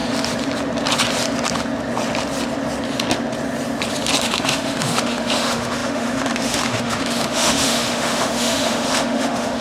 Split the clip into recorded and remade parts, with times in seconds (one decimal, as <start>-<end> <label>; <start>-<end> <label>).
0.0-4.2 recorded; 4.2-9.6 remade

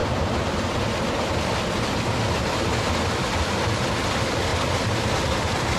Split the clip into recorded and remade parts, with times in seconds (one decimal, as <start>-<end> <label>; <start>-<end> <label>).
0.0-5.8 recorded

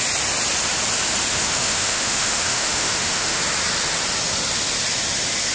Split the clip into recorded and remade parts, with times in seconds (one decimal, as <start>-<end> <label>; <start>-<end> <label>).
0.0-1.3 recorded; 1.3-3.4 remade; 3.4-5.5 recorded

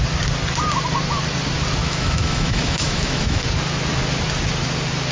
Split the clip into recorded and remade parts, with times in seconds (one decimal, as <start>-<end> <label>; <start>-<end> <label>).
0.0-1.8 recorded; 1.8-3.4 remade; 3.4-5.1 recorded